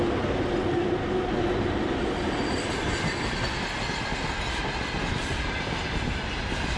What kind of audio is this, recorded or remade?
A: recorded